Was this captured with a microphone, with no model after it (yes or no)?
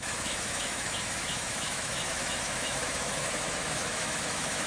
no